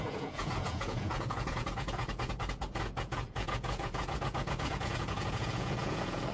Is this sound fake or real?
fake